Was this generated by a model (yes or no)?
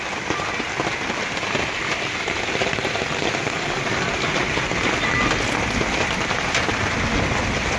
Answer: no